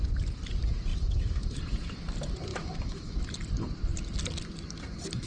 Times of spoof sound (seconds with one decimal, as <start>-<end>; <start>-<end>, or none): 0.9-1.6; 2.5-3.2